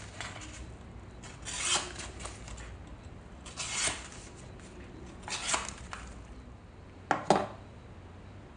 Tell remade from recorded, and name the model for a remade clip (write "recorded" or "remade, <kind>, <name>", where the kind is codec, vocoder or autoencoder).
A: recorded